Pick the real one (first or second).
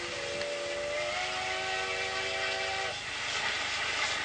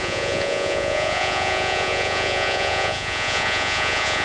first